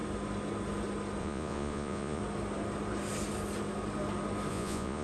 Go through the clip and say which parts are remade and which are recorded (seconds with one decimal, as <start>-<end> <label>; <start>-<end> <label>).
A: 0.0-1.2 recorded; 1.2-2.2 remade; 2.2-4.5 recorded; 4.5-5.0 remade